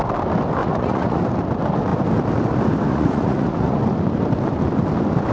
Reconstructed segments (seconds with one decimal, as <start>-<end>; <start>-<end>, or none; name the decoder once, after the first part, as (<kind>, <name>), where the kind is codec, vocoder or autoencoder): 0.6-1.2 (vocoder, Vocos); 2.9-3.8